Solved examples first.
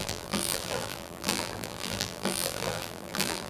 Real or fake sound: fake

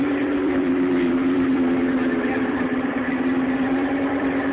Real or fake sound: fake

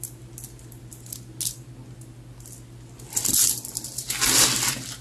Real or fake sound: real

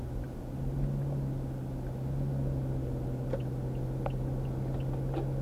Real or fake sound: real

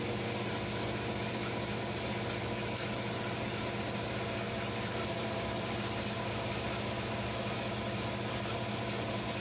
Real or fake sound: real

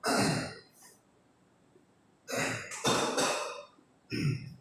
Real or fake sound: fake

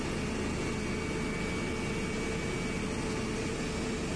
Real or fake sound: real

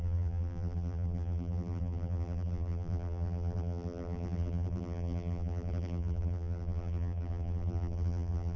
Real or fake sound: fake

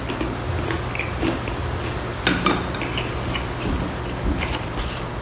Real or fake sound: real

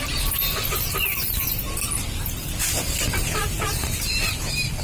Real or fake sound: fake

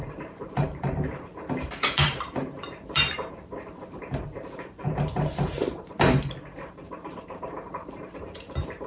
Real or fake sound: fake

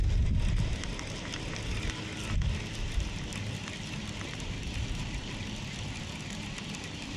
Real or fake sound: real